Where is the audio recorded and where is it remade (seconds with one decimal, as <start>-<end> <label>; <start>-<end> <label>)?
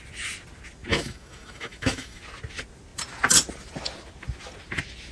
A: 0.0-0.9 recorded; 0.9-2.2 remade; 2.2-5.1 recorded